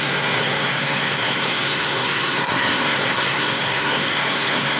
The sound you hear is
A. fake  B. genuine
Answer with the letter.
A